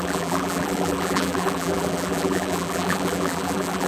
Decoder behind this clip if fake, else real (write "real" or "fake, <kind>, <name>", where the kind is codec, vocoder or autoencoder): fake, vocoder, BigVGAN v2